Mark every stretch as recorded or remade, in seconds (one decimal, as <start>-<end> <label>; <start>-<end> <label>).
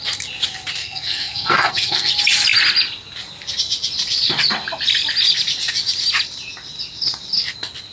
0.0-0.8 recorded; 0.8-2.1 remade; 2.1-7.9 recorded